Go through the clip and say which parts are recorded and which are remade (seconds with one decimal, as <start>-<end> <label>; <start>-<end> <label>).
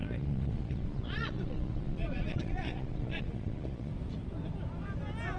0.0-3.9 remade; 3.9-5.4 recorded